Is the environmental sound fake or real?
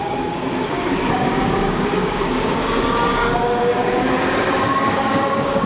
fake